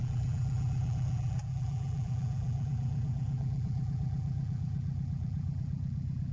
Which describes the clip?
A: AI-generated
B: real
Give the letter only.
A